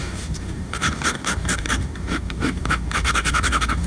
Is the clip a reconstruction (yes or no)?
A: yes